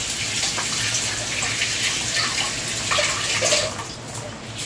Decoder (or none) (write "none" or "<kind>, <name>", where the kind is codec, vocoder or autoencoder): none